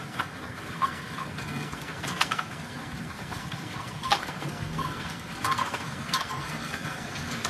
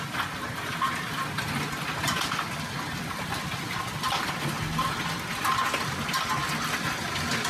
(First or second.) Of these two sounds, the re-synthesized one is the first